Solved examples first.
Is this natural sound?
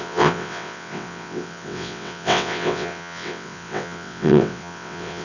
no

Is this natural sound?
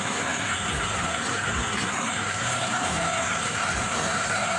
no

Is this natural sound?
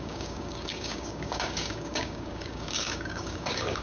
no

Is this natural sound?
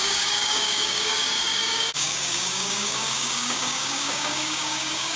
no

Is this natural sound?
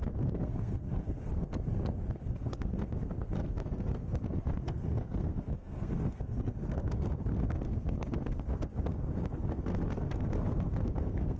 no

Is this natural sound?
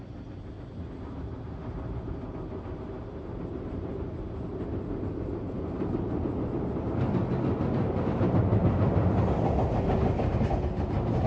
yes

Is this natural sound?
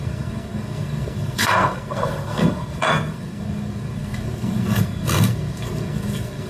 no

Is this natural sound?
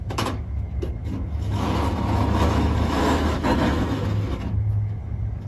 no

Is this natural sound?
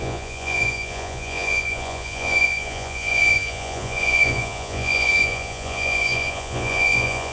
no